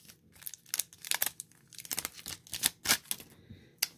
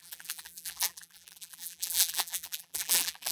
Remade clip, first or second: second